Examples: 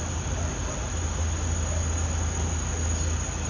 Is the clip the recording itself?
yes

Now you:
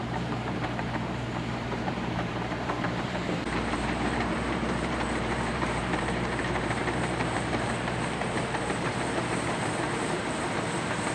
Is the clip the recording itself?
no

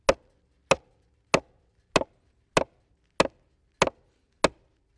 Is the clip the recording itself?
yes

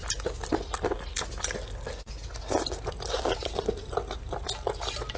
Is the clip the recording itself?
yes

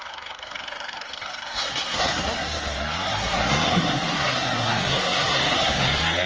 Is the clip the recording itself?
no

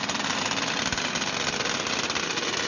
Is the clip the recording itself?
yes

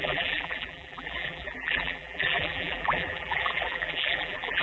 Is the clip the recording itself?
no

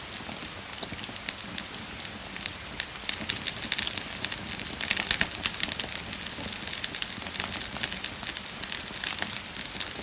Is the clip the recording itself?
yes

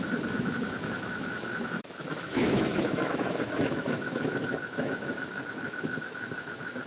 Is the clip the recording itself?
no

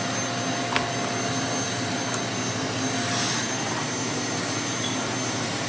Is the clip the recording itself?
yes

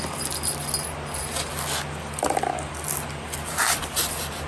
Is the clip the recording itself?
yes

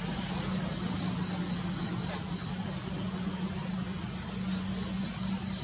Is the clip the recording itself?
yes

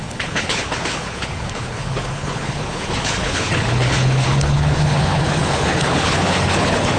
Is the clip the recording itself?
no